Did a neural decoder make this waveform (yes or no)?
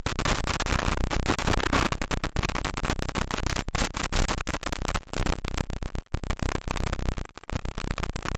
no